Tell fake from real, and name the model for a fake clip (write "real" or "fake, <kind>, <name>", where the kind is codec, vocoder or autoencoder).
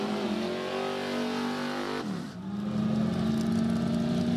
real